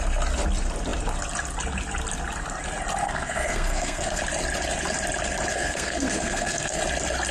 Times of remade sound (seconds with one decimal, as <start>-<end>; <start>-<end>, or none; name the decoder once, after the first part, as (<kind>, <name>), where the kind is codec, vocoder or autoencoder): 3.0-4.2 (codec, SNAC); 5.5-6.8